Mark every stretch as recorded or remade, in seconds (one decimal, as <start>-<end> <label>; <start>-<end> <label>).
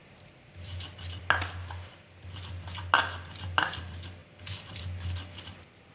0.0-4.2 recorded; 4.2-4.8 remade; 4.8-5.9 recorded